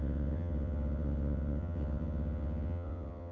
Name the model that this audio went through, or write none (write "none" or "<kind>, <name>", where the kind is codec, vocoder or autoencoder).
vocoder, WaveNeXt